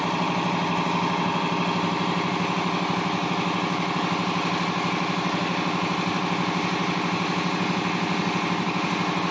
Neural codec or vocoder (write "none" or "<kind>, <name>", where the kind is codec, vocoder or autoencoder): none